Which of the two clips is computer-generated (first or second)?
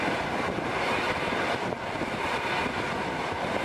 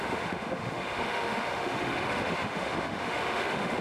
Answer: second